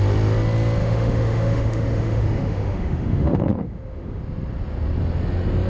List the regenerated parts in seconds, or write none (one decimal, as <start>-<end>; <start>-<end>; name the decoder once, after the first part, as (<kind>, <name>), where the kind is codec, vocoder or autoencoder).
0.8-4.2 (autoencoder, DAC-VAE)